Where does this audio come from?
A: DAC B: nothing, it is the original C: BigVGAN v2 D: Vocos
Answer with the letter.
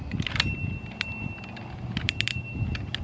B